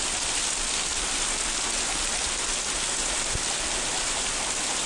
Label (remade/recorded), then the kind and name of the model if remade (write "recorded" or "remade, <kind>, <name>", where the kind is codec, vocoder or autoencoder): recorded